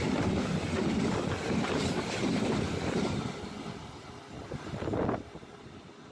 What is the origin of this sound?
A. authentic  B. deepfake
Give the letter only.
A